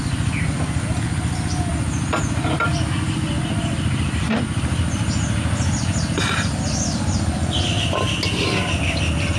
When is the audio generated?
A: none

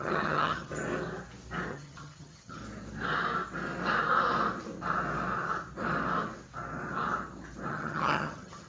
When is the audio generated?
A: 0.0-0.8 (vocoder, HiFi-GAN); 1.7-2.6; 7.7-8.7

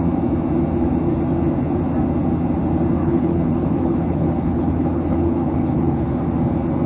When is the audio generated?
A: 3.0-6.1 (codec, HILCodec)

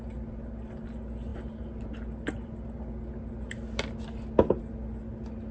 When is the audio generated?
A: none